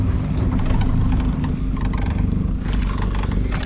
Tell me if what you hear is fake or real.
real